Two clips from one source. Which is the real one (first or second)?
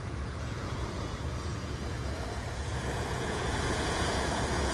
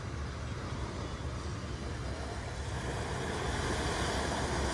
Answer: second